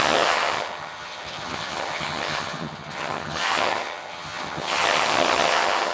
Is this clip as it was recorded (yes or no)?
no